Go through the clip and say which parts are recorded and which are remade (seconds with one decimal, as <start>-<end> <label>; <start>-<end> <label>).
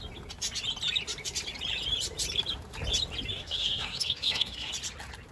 0.0-3.3 recorded; 3.3-4.7 remade; 4.7-5.3 recorded